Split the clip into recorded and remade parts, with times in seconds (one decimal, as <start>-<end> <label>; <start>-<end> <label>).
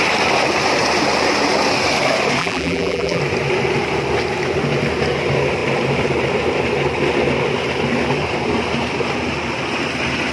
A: 0.0-2.4 recorded; 2.4-3.2 remade; 3.2-10.3 recorded